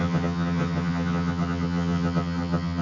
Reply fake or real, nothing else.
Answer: fake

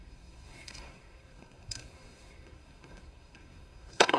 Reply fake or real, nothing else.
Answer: fake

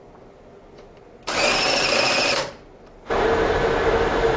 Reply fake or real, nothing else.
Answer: real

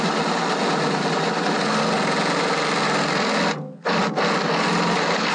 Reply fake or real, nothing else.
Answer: real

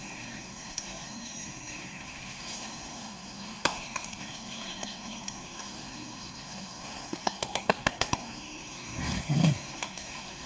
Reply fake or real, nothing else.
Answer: fake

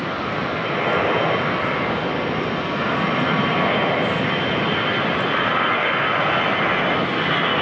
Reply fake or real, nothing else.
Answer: real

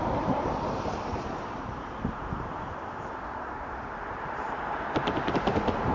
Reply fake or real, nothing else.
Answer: fake